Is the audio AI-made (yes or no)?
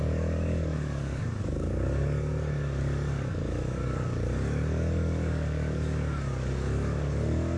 yes